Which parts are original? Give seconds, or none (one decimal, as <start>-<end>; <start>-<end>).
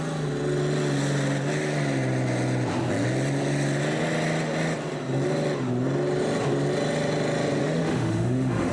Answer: 0.0-7.6